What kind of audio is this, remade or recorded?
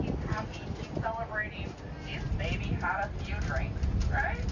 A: recorded